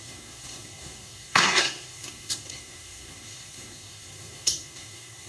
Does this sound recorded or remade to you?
remade